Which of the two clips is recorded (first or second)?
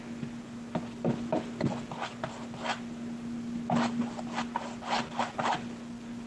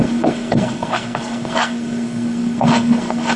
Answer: first